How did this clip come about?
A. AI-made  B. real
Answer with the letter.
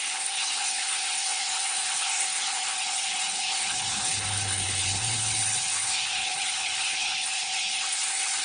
A